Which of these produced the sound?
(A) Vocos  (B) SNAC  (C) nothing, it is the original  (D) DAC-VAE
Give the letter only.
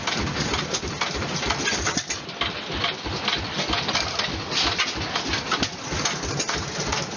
C